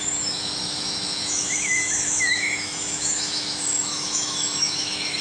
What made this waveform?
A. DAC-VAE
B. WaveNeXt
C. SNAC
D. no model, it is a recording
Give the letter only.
A